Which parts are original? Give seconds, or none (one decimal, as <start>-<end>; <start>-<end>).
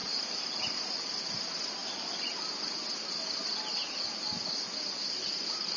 0.0-5.8